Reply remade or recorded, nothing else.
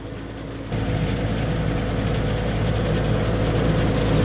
recorded